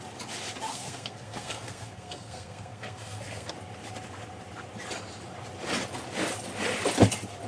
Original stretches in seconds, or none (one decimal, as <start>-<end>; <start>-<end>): 0.0-0.7; 3.5-7.5